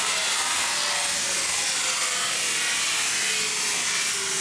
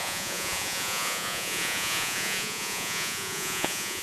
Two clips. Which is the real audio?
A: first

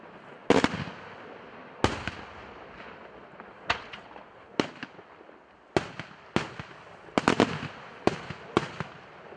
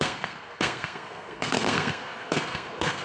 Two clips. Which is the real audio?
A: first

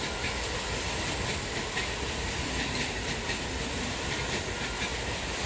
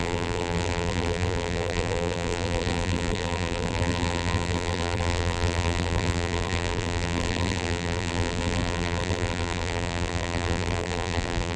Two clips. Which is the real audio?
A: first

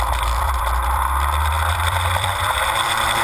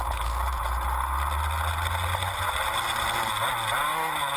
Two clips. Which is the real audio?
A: second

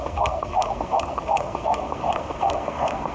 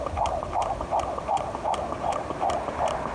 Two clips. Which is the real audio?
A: second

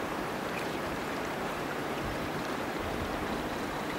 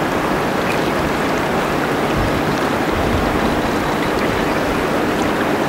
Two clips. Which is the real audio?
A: second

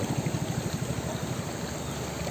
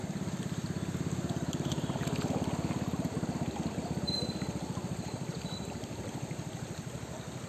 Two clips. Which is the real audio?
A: first